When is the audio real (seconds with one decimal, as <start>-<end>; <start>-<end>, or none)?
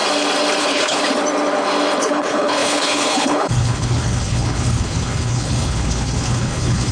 0.0-0.6; 1.0-2.0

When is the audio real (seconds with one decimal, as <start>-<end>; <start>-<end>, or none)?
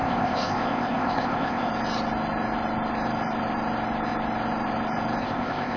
1.7-5.2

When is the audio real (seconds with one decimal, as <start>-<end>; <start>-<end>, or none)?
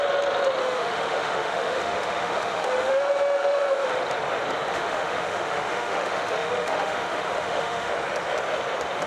0.0-0.6; 3.9-4.7; 7.9-9.1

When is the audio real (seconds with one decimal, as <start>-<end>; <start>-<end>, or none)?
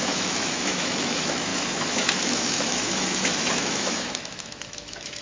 none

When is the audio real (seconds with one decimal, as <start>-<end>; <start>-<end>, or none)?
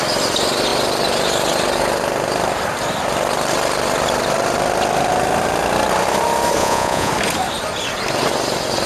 0.0-6.6; 7.1-8.9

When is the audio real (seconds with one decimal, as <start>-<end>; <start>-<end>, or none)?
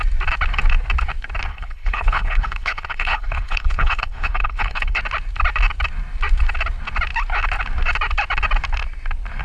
0.0-1.5; 5.0-9.4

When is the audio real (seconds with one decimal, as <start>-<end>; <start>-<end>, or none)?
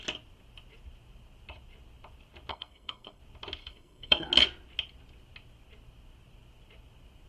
0.0-2.5; 3.2-3.6; 4.3-7.3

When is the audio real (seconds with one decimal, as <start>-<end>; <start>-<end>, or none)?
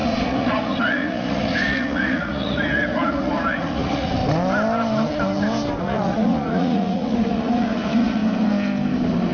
4.2-5.8; 8.2-9.3